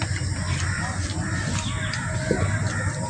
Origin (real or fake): real